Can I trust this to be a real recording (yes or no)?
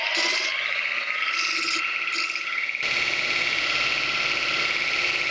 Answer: yes